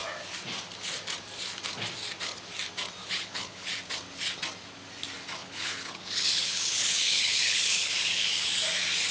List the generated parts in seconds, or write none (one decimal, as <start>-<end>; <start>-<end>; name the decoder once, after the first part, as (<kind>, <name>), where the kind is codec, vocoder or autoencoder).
3.0-3.7 (codec, HILCodec); 5.4-8.5